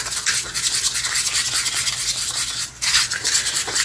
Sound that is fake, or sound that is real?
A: real